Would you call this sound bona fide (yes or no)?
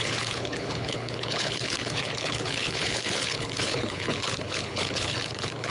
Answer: no